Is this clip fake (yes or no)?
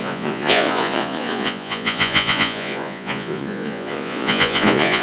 yes